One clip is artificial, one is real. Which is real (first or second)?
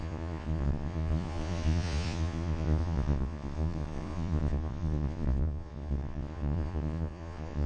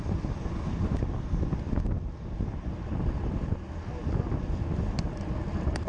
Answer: second